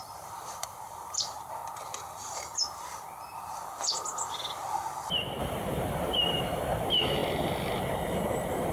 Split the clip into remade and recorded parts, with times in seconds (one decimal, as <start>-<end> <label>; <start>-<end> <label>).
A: 0.0-1.6 remade; 1.6-5.4 recorded; 5.4-7.2 remade; 7.2-8.1 recorded; 8.1-8.7 remade